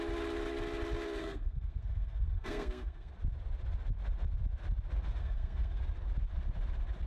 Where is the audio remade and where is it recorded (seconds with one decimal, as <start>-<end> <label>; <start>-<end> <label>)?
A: 0.0-1.2 recorded; 1.2-3.1 remade; 3.1-5.2 recorded; 5.2-5.8 remade; 5.8-7.1 recorded